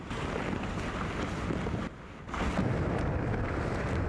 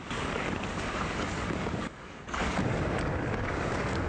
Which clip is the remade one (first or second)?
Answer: second